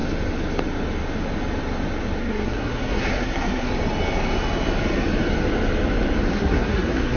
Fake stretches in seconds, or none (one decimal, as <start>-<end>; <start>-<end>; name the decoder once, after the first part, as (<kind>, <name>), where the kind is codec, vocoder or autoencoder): 2.2-3.7 (codec, SNAC); 6.3-7.2